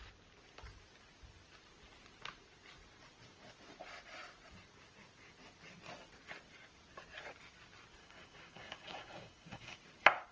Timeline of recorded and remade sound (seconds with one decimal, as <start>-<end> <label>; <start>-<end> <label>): 0.0-8.0 recorded; 8.0-9.8 remade; 9.8-10.3 recorded